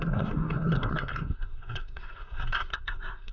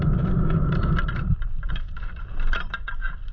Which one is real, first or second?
second